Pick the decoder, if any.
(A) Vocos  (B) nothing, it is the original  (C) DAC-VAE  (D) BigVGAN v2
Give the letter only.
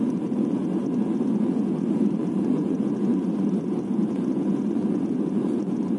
A